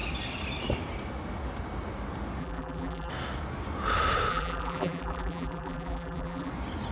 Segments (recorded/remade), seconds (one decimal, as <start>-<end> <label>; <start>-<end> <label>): 0.0-2.4 recorded; 2.4-3.1 remade; 3.1-4.3 recorded; 4.3-6.5 remade; 6.5-6.9 recorded